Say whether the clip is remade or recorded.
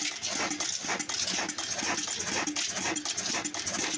recorded